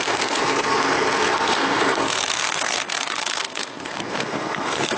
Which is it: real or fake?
fake